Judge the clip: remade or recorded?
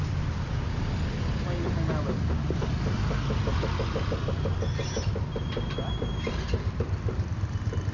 recorded